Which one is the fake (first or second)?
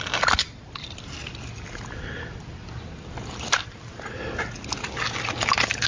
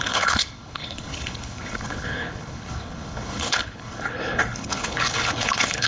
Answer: second